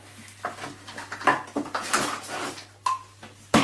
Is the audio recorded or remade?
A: recorded